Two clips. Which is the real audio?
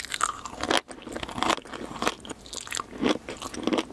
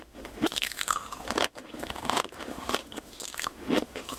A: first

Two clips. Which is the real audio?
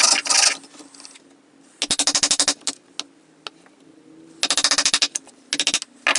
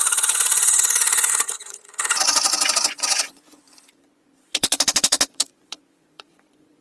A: first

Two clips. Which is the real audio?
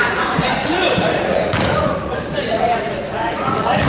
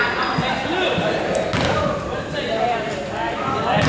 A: second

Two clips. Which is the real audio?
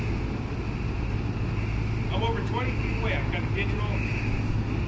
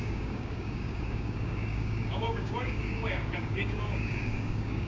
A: first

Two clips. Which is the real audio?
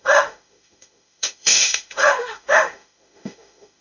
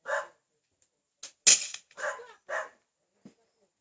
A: second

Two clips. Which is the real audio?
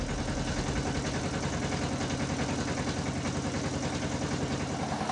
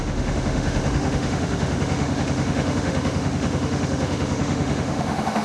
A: first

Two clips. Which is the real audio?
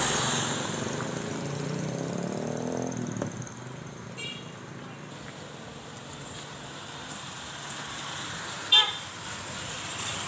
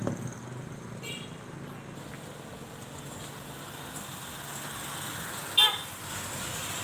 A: second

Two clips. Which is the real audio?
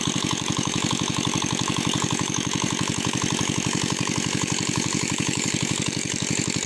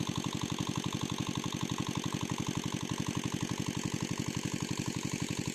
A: second